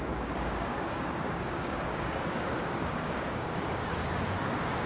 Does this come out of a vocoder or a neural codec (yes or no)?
yes